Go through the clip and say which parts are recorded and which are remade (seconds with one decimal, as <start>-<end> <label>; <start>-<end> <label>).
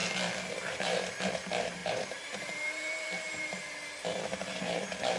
0.0-0.5 recorded; 0.5-5.2 remade